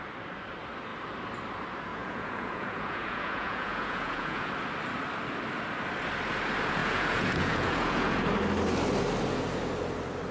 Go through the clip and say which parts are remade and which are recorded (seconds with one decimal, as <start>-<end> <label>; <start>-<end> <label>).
0.0-1.9 recorded; 1.9-4.5 remade; 4.5-6.8 recorded; 6.8-8.2 remade; 8.2-10.3 recorded